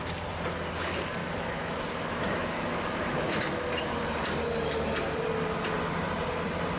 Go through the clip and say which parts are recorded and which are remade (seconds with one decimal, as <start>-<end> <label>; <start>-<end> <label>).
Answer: 0.0-1.2 recorded; 1.2-4.2 remade; 4.2-6.8 recorded